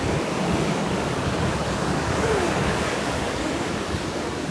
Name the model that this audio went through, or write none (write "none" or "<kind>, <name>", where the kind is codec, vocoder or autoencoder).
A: codec, DAC